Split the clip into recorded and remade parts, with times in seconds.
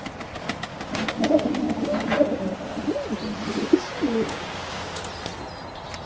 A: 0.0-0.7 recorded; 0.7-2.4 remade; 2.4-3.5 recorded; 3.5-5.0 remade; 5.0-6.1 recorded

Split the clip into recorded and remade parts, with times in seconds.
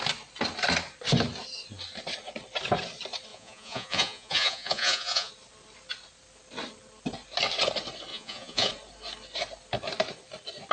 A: 0.0-3.3 recorded; 3.3-5.3 remade; 5.3-8.1 recorded; 8.1-8.7 remade; 8.7-10.7 recorded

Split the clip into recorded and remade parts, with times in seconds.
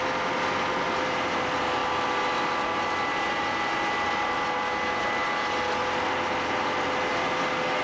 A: 0.0-7.8 recorded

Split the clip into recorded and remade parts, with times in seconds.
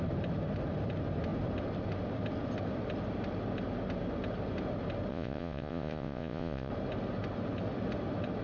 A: 0.0-5.1 recorded; 5.1-6.7 remade; 6.7-8.4 recorded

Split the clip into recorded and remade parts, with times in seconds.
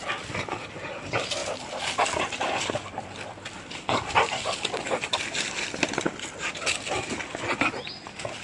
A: 0.0-1.4 recorded; 1.4-5.9 remade; 5.9-8.4 recorded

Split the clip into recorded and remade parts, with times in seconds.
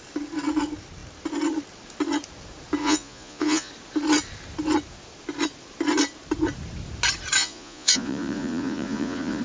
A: 0.0-2.8 recorded; 2.8-3.7 remade; 3.7-7.4 recorded; 7.4-9.4 remade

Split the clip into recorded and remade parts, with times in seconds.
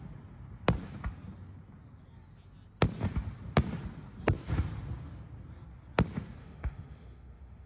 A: 0.0-6.4 recorded; 6.4-7.7 remade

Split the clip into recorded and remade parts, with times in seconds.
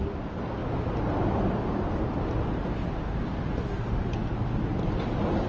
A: 0.0-5.5 recorded